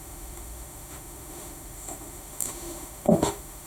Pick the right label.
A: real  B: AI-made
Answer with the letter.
B